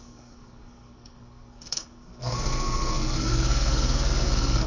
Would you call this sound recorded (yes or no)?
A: no